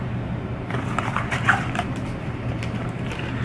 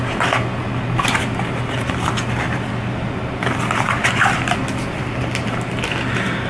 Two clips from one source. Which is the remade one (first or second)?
first